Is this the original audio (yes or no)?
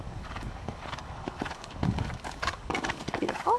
no